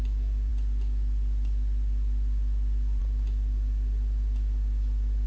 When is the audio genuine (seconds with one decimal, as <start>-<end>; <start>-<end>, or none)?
0.0-5.3